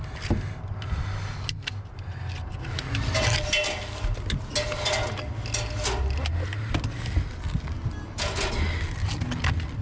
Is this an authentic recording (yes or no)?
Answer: yes